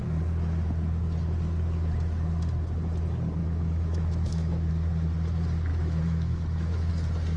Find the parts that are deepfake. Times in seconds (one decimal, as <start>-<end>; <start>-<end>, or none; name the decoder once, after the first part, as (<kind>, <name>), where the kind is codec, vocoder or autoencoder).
3.4-4.7 (autoencoder, DAC-VAE); 5.7-6.9